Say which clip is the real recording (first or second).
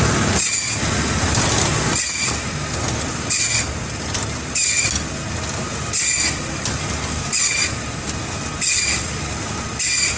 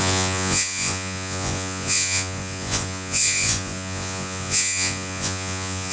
first